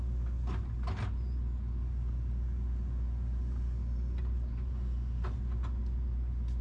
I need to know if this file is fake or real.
real